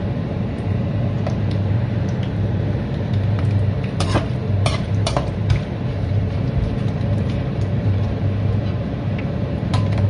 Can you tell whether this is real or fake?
fake